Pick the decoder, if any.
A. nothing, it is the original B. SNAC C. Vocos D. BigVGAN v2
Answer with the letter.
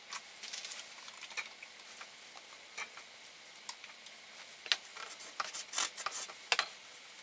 A